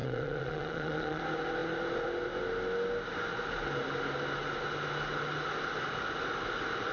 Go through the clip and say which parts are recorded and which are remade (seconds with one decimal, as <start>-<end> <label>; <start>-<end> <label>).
0.0-1.2 remade; 1.2-6.9 recorded